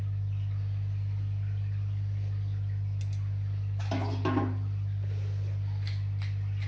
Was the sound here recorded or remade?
recorded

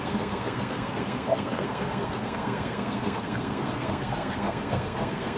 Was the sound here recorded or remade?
remade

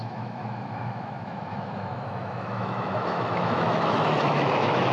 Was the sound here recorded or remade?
remade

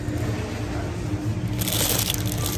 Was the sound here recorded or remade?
recorded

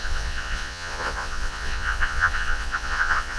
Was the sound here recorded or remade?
remade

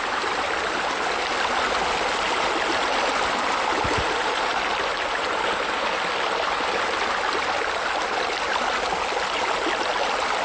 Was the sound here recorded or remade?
recorded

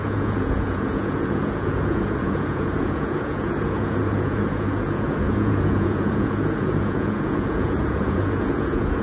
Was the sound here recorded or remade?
remade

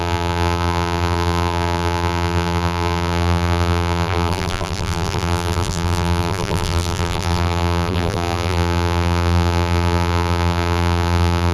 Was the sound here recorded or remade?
remade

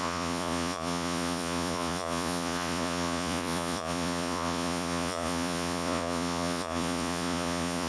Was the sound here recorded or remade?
remade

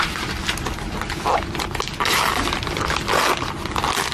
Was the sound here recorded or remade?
recorded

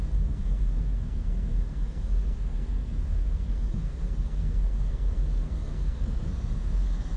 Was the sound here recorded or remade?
remade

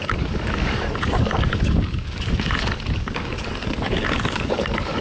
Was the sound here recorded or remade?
remade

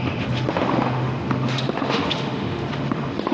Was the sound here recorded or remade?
remade